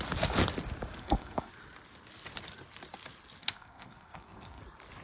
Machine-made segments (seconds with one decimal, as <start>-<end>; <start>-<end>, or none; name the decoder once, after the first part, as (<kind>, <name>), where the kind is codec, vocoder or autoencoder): 1.0-1.5 (codec, SNAC); 3.4-4.6